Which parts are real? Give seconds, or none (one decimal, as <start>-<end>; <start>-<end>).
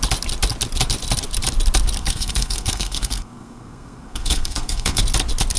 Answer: 0.0-2.0; 5.0-5.6